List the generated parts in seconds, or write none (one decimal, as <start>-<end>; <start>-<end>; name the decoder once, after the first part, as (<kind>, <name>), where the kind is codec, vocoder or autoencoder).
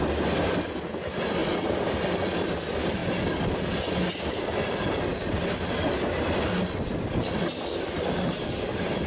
none